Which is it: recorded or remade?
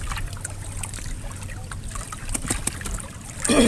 recorded